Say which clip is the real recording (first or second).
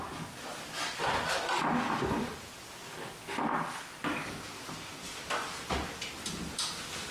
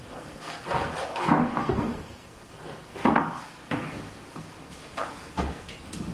first